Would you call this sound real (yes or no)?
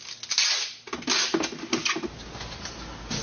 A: yes